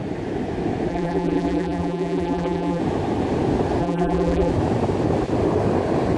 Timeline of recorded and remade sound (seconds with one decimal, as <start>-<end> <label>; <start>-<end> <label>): 0.0-0.9 recorded; 0.9-2.8 remade; 2.8-3.8 recorded; 3.8-4.5 remade; 4.5-6.2 recorded